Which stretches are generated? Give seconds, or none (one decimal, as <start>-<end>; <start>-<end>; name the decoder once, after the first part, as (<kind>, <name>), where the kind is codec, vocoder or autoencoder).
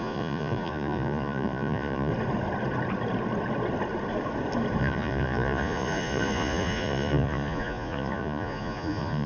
0.0-2.1 (vocoder, Vocos); 4.8-9.3